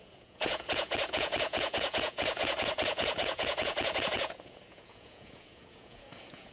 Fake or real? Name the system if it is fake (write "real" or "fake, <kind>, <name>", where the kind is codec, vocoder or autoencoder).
fake, vocoder, Vocos